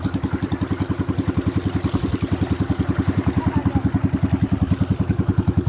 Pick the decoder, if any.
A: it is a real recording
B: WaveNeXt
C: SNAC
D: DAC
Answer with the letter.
A